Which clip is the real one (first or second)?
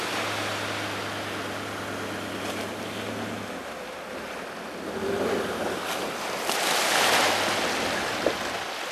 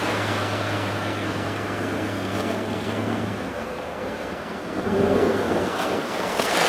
first